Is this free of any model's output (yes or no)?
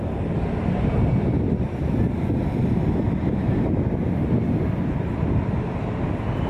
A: yes